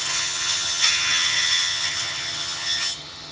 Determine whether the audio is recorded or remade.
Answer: remade